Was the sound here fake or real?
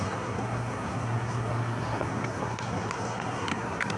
fake